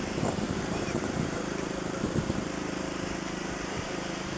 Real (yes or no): no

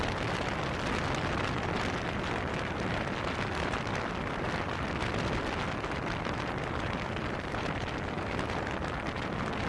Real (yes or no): yes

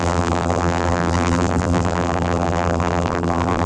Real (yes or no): no